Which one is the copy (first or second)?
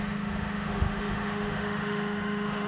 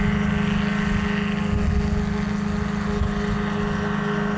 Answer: first